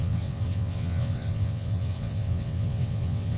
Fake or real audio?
fake